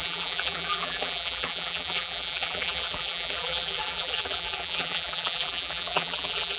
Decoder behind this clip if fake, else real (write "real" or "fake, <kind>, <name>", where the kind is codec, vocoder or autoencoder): fake, vocoder, BigVGAN v2